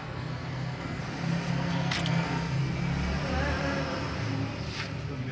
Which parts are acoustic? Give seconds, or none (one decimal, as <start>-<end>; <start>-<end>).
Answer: 1.0-1.5; 2.6-5.3